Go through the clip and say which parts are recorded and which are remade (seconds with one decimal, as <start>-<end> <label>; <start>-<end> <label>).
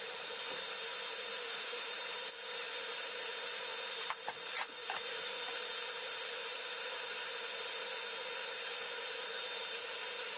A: 0.0-1.4 recorded; 1.4-1.9 remade; 1.9-10.4 recorded